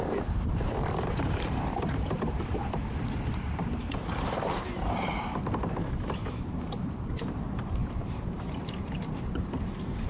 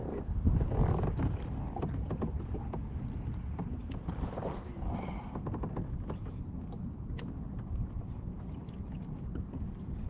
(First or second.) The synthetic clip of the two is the first